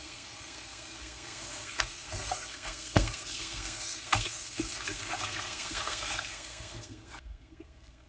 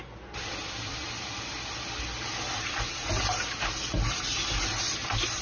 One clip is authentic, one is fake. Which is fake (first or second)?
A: first